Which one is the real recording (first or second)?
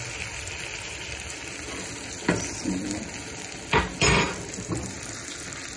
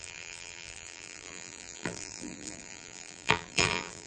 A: first